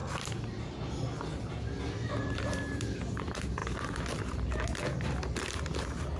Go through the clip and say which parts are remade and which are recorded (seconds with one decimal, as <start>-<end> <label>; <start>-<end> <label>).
0.0-6.2 recorded